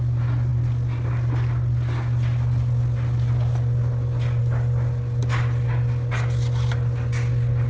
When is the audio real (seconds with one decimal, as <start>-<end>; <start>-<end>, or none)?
0.0-7.7

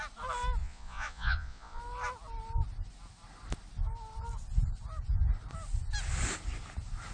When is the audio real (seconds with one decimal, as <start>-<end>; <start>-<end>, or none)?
0.0-0.6; 1.8-7.1

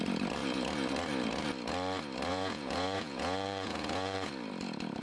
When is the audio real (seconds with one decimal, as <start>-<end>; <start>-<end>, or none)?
0.0-2.3; 4.3-5.0

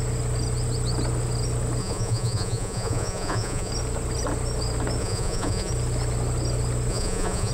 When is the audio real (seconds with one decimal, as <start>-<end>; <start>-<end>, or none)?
0.0-1.8; 3.7-5.0; 5.7-6.9

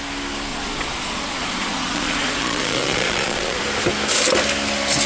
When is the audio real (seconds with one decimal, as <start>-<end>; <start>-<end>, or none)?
0.0-0.5; 3.6-5.1

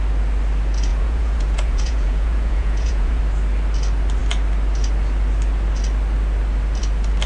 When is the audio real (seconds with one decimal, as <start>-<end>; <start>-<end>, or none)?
0.0-0.9; 3.2-7.3

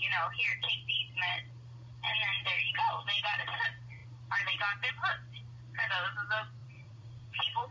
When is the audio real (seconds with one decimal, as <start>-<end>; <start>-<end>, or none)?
0.0-6.6

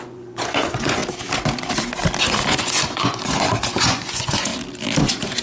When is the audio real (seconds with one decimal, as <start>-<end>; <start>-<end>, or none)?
1.0-2.2; 4.5-5.0